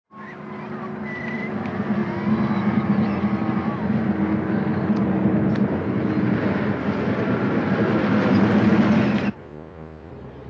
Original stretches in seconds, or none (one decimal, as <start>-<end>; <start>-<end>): 0.0-9.4; 10.1-10.5